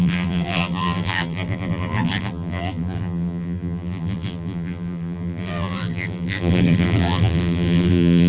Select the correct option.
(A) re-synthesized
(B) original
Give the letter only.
A